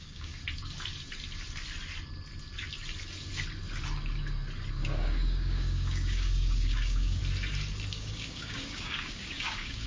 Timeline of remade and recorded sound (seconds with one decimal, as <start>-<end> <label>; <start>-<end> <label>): 0.0-0.4 remade; 0.4-4.7 recorded; 4.7-7.2 remade; 7.2-7.9 recorded; 7.9-9.9 remade